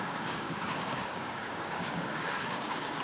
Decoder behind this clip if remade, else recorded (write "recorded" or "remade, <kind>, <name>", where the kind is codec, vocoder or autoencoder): remade, codec, DAC